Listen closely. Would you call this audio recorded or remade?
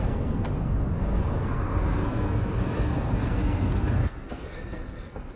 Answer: remade